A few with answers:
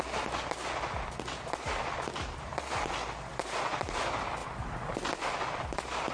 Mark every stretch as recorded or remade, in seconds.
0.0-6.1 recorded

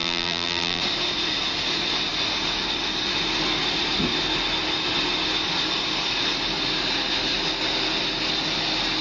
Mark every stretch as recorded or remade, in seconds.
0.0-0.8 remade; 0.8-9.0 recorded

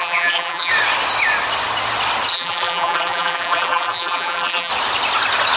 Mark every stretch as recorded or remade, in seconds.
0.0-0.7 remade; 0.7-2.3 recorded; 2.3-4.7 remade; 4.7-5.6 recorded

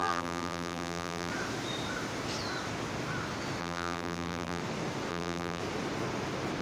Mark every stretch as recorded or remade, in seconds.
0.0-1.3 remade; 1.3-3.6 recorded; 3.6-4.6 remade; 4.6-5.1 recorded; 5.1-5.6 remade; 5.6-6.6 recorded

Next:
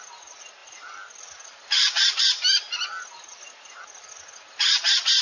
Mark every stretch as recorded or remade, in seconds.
0.0-0.6 recorded; 0.6-3.7 remade; 3.7-5.2 recorded

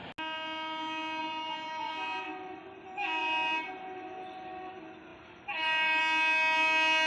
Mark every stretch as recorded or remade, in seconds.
0.0-1.2 recorded; 1.2-1.9 remade; 1.9-3.2 recorded; 3.2-3.7 remade; 3.7-5.1 recorded; 5.1-6.0 remade; 6.0-7.1 recorded

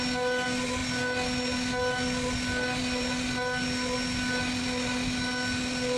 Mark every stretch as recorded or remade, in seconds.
0.0-6.0 recorded